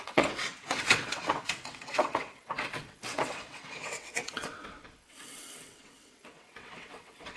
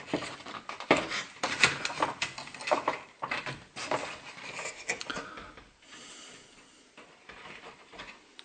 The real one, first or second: second